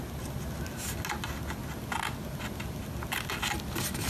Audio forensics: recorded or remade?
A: recorded